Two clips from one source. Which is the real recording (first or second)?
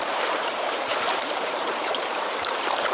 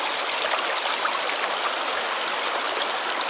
second